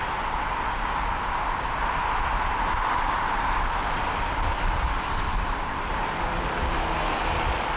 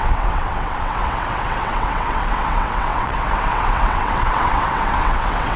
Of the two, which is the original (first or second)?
first